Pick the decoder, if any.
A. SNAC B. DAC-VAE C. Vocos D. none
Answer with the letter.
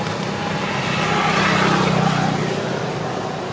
D